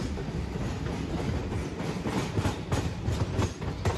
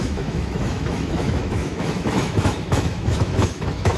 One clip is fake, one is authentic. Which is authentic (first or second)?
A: first